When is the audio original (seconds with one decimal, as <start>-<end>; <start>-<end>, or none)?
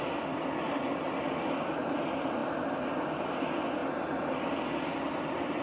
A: 0.0-5.6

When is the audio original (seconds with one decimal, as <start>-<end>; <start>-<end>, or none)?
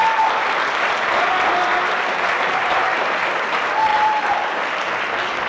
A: 0.0-2.4; 3.2-3.9; 5.1-5.5